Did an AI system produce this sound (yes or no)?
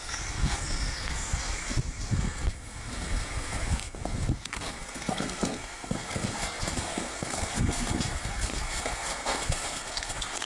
yes